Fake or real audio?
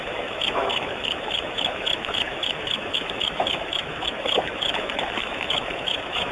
fake